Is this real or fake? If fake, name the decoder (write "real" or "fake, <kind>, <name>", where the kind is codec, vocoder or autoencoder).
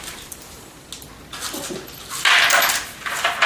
real